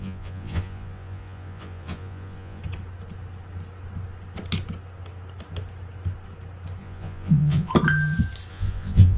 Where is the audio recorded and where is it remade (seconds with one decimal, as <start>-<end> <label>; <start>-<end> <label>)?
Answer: 0.0-2.6 remade; 2.6-6.8 recorded; 6.8-7.7 remade; 7.7-8.5 recorded; 8.5-9.2 remade